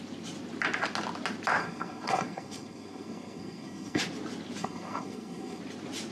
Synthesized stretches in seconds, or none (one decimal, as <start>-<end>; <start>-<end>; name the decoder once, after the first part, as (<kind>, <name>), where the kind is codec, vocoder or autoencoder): 1.6-4.0 (codec, SNAC); 4.6-5.6